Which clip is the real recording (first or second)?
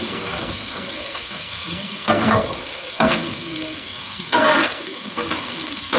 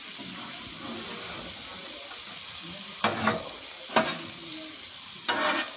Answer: second